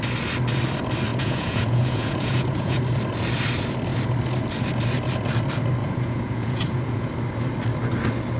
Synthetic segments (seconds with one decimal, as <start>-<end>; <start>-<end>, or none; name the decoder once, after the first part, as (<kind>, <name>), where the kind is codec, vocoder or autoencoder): 1.1-2.8 (vocoder, Vocos); 5.8-7.1